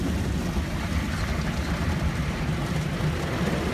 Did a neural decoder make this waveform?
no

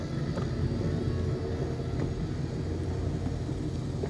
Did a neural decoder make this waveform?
no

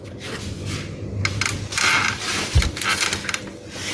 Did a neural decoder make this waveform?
no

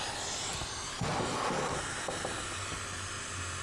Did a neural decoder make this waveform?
no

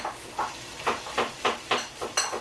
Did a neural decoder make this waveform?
yes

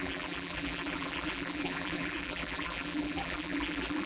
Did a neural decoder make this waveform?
yes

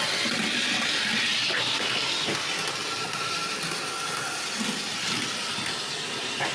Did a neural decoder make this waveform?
no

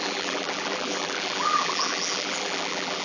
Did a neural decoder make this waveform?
yes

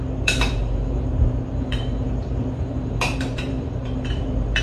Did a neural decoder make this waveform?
yes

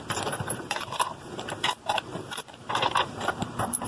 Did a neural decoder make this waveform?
yes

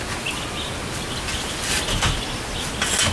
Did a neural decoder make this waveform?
no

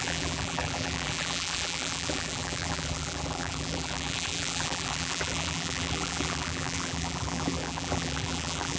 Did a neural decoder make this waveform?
yes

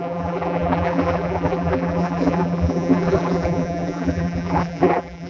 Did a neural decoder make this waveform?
yes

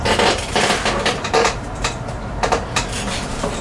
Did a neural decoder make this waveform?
yes